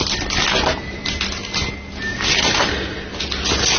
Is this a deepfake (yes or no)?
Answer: no